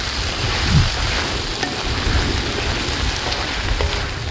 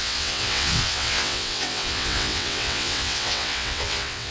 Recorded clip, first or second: first